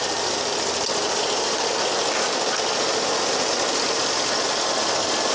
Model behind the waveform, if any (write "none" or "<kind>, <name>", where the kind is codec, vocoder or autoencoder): none